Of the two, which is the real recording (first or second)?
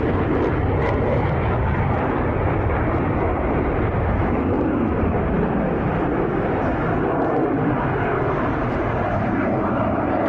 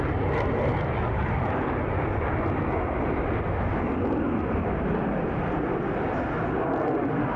second